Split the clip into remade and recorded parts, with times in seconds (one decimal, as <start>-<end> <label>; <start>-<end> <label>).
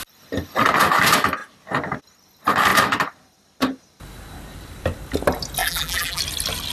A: 0.0-5.6 recorded; 5.6-6.2 remade; 6.2-6.7 recorded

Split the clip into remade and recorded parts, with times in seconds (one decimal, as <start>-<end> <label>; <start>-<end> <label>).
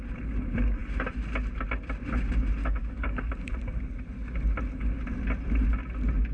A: 0.0-2.6 recorded; 2.6-3.3 remade; 3.3-6.3 recorded